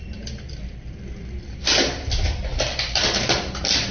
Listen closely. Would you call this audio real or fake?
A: real